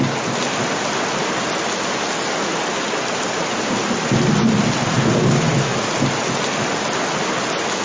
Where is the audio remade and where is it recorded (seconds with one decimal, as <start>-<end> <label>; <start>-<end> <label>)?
0.0-7.8 recorded